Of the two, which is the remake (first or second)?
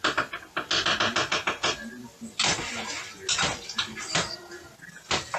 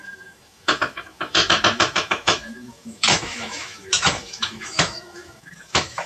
second